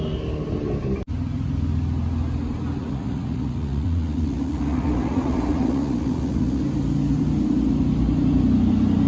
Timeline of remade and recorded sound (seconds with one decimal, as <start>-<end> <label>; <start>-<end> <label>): 0.0-2.8 recorded; 2.8-6.6 remade; 6.6-9.1 recorded

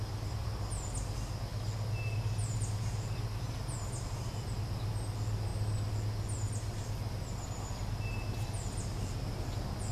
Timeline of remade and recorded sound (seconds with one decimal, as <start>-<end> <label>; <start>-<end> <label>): 0.0-9.9 recorded

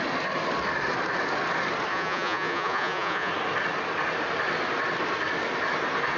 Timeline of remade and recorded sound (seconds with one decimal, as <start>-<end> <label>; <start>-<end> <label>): 0.0-1.9 recorded; 1.9-3.3 remade; 3.3-6.2 recorded

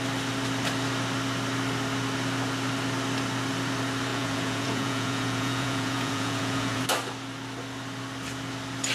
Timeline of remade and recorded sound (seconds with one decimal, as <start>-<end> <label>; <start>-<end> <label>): 0.0-4.1 recorded; 4.1-6.8 remade; 6.8-8.9 recorded

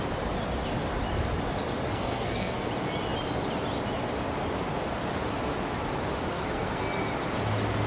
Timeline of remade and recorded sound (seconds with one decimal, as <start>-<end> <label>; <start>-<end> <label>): 0.0-1.9 recorded; 1.9-2.7 remade; 2.7-6.3 recorded; 6.3-6.8 remade; 6.8-7.9 recorded